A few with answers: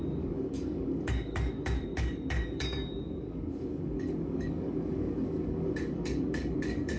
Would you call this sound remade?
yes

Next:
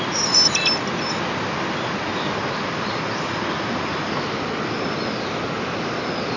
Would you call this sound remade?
no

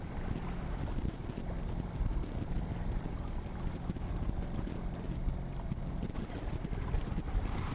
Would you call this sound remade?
no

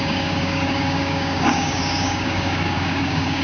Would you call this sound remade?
yes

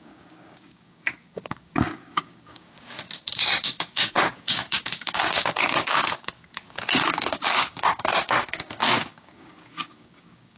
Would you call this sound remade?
yes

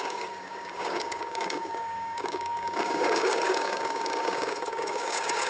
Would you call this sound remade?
yes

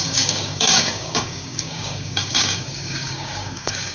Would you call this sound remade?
yes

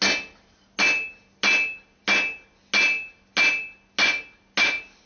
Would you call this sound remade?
no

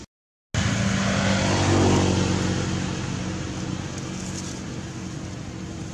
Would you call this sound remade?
no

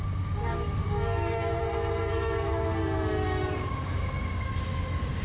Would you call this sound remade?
yes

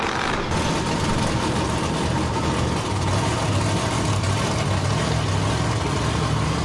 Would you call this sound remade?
no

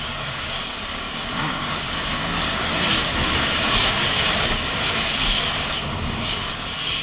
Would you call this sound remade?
yes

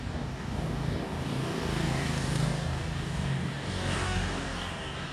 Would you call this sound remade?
yes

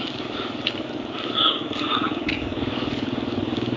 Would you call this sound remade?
yes